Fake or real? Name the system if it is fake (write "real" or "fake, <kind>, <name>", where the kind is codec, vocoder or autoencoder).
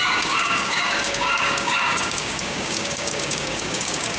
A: fake, codec, DAC